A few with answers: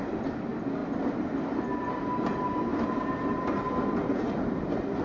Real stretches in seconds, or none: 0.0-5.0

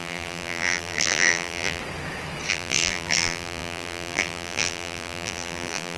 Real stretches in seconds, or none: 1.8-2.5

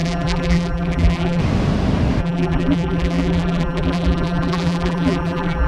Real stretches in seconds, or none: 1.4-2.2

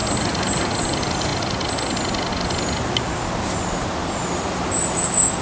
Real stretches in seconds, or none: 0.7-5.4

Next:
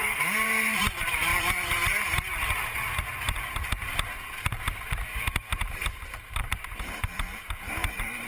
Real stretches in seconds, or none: none

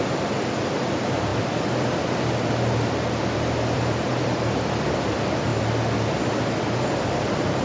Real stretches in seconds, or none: 5.5-6.9

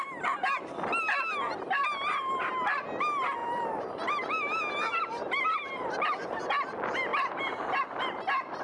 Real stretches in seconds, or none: 0.0-1.8; 2.5-3.4; 6.4-7.1; 7.8-8.6

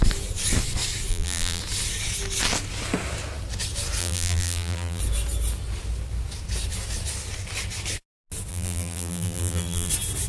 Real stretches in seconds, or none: 0.0-1.1; 1.6-4.0; 5.0-8.5; 9.9-10.3